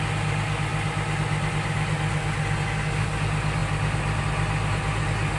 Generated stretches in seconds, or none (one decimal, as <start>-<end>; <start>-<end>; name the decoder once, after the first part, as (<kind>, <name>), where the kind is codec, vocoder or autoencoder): none